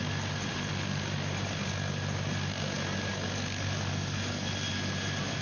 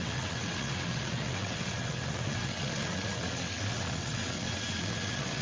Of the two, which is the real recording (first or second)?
first